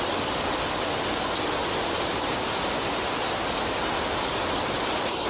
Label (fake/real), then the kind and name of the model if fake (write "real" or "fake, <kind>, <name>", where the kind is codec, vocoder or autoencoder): real